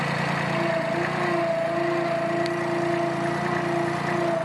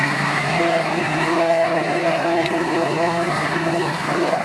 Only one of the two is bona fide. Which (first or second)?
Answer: first